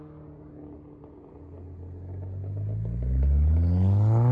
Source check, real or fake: real